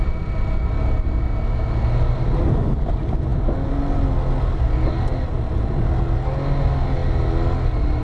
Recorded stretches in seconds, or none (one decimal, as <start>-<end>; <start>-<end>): 0.0-8.0